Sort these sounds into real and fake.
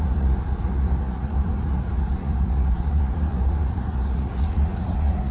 fake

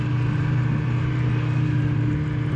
real